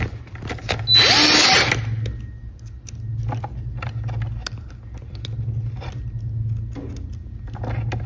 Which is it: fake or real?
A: real